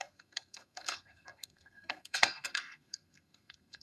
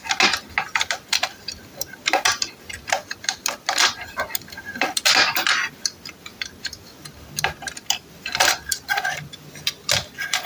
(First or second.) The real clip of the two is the second